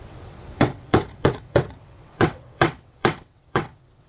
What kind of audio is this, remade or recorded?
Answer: remade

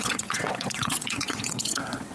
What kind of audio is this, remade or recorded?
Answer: remade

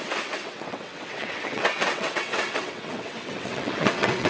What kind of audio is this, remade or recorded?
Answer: remade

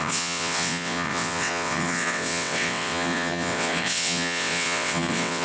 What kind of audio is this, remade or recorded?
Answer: remade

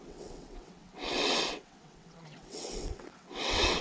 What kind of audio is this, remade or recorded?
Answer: remade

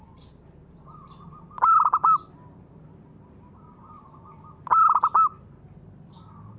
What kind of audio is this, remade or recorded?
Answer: recorded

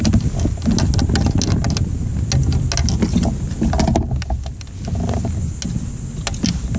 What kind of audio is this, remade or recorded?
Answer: recorded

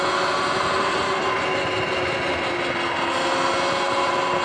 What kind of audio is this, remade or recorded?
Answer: recorded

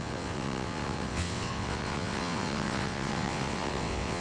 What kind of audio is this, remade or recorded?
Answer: remade